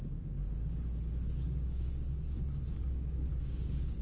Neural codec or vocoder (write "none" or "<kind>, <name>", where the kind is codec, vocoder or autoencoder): codec, DAC